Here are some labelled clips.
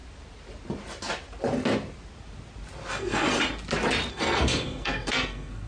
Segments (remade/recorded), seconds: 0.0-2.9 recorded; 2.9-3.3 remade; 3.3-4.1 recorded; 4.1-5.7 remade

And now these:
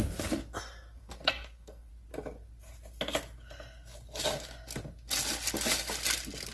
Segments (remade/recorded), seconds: 0.0-1.0 recorded; 1.0-1.9 remade; 1.9-6.5 recorded